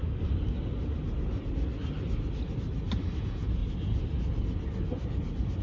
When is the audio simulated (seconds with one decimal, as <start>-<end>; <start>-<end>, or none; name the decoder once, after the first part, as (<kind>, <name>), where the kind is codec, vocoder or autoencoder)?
3.2-3.6 (vocoder, Vocos)